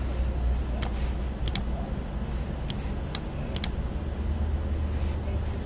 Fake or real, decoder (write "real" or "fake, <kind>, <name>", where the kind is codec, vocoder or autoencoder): real